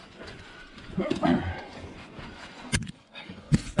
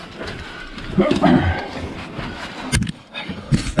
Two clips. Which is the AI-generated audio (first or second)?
first